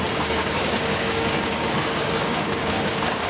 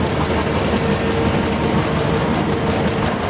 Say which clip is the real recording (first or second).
second